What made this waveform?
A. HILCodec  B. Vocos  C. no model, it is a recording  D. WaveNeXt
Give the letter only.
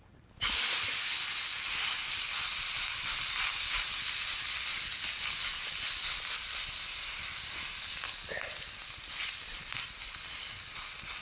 C